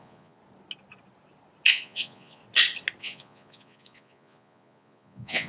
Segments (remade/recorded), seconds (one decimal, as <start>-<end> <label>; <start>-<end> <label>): 0.0-0.4 remade; 0.4-1.7 recorded; 1.7-2.4 remade; 2.4-3.0 recorded; 3.0-5.5 remade